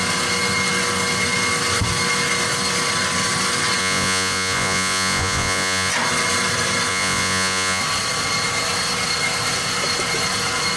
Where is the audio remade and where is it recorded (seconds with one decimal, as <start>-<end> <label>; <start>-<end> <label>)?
0.0-3.8 recorded; 3.8-5.9 remade; 5.9-6.9 recorded; 6.9-7.8 remade; 7.8-10.8 recorded